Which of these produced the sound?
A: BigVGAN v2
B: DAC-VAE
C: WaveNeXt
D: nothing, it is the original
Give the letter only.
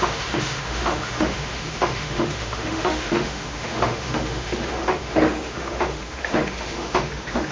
B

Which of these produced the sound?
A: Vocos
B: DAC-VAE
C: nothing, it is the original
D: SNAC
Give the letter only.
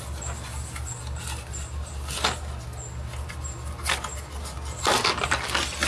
C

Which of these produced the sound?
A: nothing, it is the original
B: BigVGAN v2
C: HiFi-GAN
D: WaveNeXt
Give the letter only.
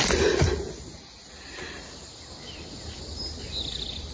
A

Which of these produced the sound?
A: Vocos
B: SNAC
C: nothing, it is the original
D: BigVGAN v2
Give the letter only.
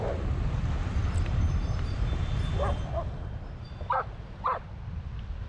C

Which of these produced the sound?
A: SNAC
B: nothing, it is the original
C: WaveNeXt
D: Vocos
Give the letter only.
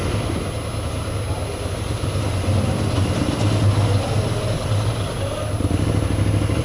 B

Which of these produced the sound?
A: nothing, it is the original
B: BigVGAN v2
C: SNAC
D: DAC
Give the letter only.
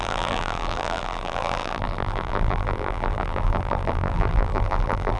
B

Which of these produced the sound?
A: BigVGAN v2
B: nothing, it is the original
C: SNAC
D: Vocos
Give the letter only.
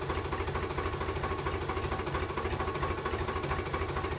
B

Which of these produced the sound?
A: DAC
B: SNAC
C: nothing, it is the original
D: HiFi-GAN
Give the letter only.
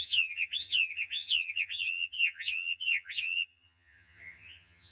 D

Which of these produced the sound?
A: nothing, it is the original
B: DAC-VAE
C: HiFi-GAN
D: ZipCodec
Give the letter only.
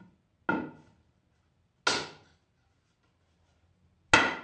A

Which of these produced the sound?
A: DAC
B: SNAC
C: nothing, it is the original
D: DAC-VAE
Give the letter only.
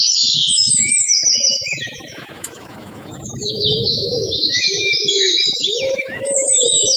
D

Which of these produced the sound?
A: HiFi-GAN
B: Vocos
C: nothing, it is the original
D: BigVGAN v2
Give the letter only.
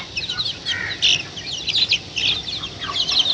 C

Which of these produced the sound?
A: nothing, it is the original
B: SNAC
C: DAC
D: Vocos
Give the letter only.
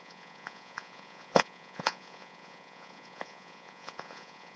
D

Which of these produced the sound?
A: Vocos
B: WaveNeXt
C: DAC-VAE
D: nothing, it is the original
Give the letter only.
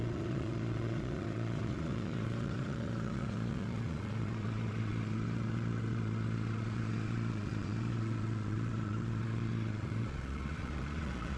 A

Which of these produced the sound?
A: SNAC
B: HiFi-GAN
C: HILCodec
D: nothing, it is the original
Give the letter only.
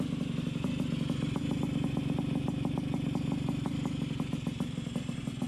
D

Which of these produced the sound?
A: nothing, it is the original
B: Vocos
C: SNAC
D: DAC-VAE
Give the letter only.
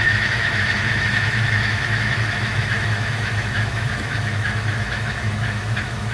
D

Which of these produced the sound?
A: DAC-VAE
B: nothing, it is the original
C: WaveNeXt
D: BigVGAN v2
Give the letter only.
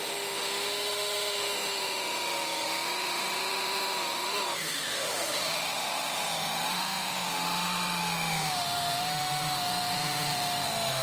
A